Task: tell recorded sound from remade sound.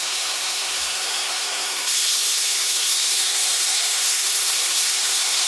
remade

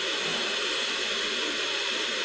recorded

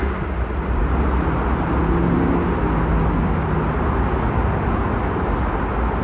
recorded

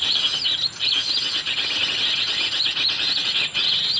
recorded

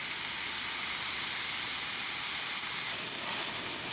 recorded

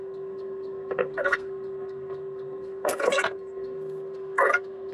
remade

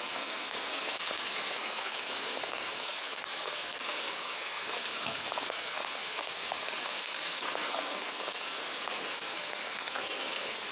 remade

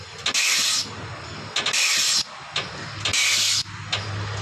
recorded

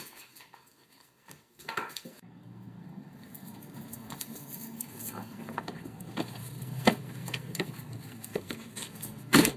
remade